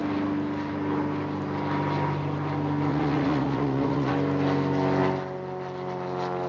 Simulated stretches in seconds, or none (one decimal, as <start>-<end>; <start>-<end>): 2.9-4.1